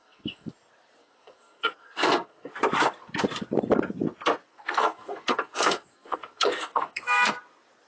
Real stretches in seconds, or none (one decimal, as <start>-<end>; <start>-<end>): 0.5-1.0; 2.6-4.5; 7.3-7.9